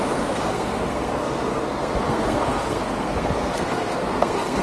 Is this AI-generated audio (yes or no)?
yes